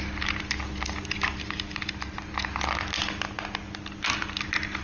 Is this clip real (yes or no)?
yes